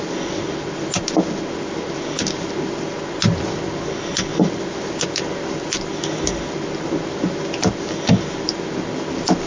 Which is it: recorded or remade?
recorded